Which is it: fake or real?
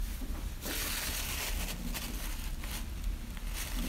real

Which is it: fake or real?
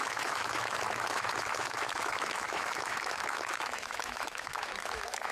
fake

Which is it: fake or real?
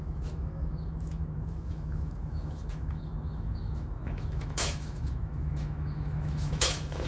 fake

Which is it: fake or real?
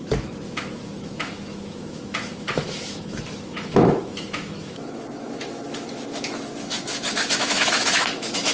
fake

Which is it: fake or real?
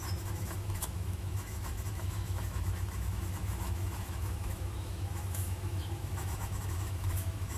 fake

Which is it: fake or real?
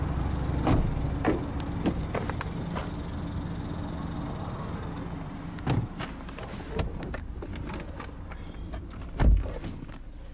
real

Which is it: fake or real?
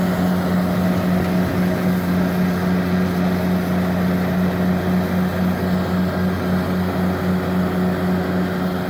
real